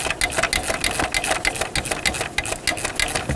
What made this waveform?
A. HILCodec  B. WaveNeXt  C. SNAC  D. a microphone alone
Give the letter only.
D